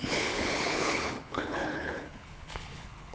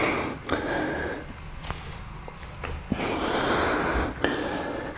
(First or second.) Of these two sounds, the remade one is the first